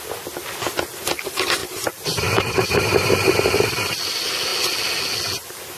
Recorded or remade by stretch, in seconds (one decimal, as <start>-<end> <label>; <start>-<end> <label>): 0.0-1.6 recorded; 1.6-3.4 remade; 3.4-5.8 recorded